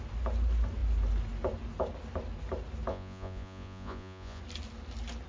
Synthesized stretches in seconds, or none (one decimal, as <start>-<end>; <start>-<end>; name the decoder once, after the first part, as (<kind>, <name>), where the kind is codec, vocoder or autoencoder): 2.9-4.4 (vocoder, Vocos)